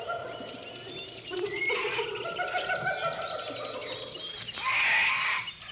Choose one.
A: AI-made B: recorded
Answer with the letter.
B